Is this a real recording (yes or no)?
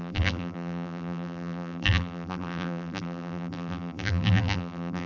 no